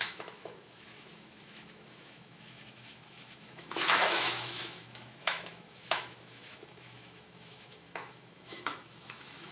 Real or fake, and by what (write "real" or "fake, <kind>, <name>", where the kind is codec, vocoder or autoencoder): fake, autoencoder, DAC-VAE